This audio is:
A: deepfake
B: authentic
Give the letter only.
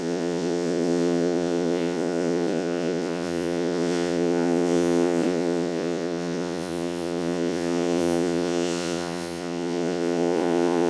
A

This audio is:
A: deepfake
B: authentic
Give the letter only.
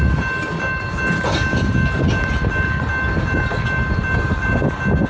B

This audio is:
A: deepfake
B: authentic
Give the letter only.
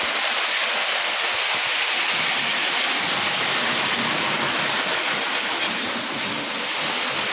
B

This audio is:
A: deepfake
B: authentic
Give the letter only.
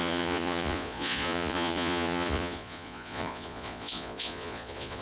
A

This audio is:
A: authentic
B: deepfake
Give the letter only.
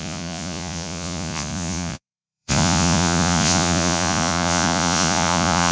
B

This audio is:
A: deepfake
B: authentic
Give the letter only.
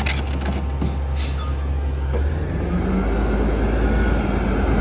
B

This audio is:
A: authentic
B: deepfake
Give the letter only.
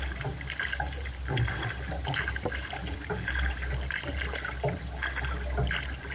A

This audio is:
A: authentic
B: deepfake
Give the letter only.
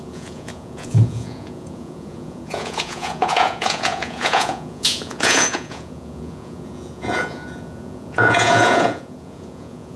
B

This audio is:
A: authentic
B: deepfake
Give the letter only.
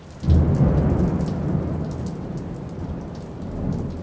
A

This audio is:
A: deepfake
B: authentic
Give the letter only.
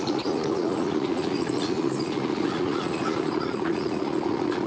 A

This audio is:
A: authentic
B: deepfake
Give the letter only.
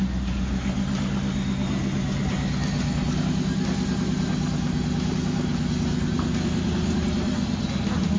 A